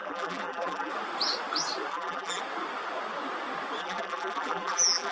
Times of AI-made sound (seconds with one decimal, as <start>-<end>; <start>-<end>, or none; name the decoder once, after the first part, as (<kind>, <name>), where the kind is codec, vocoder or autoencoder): 0.0-0.9 (vocoder, BigVGAN v2); 1.9-2.4; 3.8-5.1

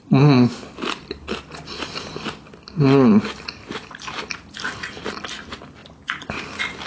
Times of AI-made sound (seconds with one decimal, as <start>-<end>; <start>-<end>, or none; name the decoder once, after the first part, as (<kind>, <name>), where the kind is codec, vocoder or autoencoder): 3.1-3.9 (vocoder, BigVGAN v2); 5.8-6.5

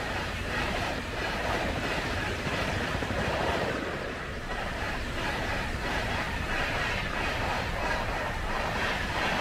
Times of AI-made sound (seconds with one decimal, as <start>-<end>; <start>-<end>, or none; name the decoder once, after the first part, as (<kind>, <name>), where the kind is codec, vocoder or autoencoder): 0.0-4.5 (vocoder, BigVGAN v2); 5.9-9.4

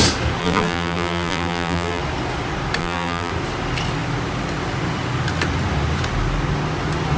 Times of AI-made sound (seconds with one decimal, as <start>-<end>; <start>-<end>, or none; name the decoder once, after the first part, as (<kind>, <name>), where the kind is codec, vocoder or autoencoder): 0.4-2.0 (vocoder, BigVGAN v2); 2.8-3.3

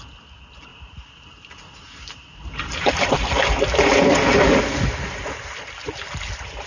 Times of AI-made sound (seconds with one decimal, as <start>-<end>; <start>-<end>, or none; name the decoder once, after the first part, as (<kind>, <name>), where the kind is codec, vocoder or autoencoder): 0.7-3.2 (vocoder, BigVGAN v2)

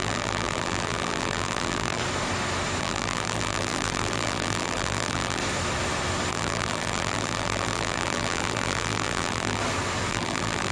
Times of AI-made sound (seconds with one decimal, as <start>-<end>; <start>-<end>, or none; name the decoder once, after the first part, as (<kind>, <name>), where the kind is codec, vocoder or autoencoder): 0.0-2.0 (vocoder, BigVGAN v2); 2.8-5.4; 6.3-9.6; 10.1-10.7

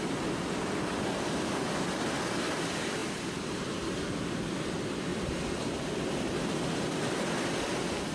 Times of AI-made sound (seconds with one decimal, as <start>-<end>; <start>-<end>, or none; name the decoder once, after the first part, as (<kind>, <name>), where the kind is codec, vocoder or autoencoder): 3.0-3.9 (vocoder, BigVGAN v2)